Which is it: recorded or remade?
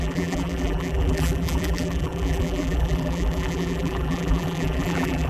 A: remade